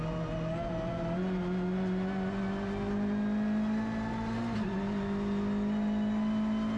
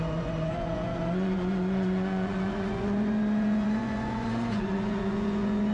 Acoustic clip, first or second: first